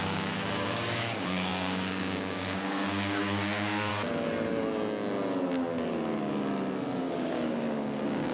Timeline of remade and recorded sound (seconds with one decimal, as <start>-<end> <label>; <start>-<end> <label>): 0.0-3.9 remade; 3.9-7.0 recorded; 7.0-8.3 remade